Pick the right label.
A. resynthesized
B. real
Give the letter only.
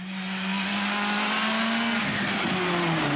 B